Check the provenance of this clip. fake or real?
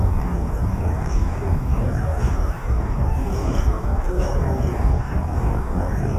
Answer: fake